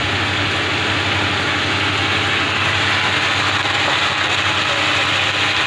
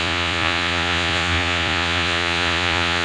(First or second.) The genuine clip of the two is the first